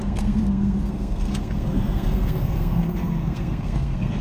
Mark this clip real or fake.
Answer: fake